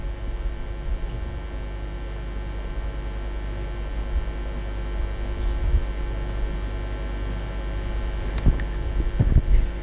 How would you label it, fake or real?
real